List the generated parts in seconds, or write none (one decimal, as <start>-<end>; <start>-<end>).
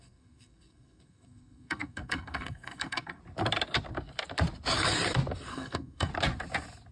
0.0-3.2; 5.5-6.1